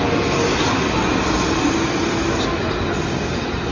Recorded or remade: recorded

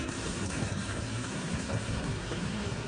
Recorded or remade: remade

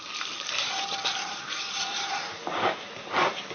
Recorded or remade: remade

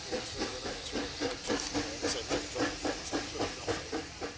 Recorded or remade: recorded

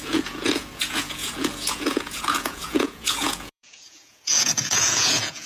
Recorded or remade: remade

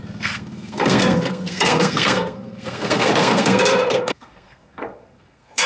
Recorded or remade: remade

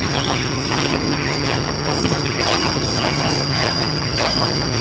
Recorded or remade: remade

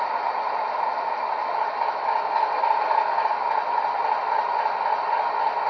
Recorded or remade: recorded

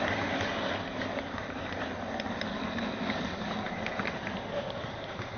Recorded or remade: recorded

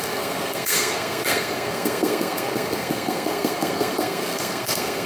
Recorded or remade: remade